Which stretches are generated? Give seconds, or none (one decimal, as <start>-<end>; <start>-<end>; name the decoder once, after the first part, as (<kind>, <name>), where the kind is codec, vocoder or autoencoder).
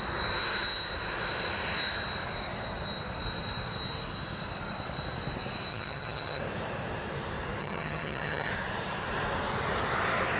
5.7-6.4 (vocoder, HiFi-GAN); 7.6-8.5